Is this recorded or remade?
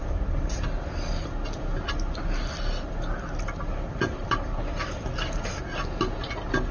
recorded